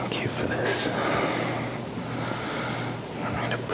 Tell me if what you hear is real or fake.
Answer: real